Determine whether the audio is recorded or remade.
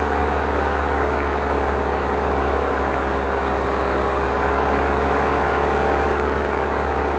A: remade